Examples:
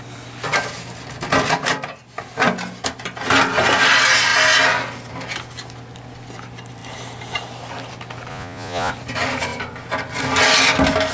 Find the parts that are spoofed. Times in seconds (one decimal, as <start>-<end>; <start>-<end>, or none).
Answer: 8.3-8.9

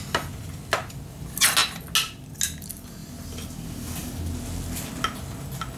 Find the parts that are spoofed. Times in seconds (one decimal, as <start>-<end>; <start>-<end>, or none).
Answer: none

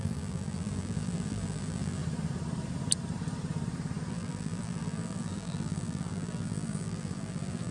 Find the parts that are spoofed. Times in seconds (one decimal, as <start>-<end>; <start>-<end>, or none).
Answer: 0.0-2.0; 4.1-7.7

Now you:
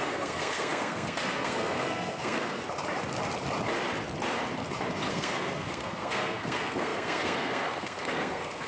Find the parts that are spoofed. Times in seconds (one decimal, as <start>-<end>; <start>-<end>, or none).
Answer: 0.0-2.6; 5.1-8.7

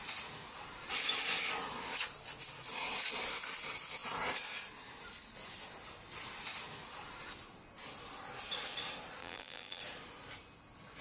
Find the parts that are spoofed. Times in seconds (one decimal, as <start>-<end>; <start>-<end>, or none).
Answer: 9.2-9.8